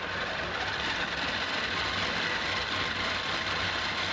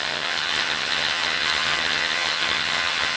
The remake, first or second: second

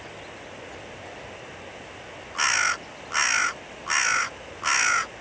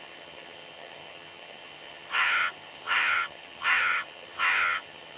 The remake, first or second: second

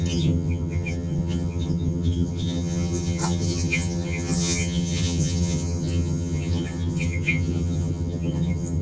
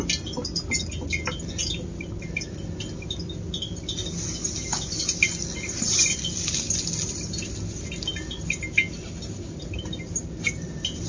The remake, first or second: first